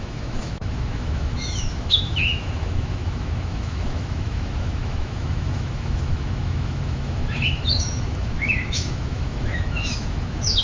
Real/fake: fake